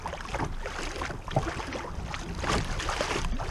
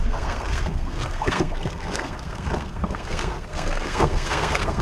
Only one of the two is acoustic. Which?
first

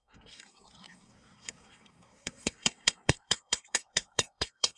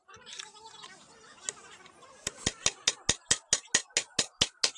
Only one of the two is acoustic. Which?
second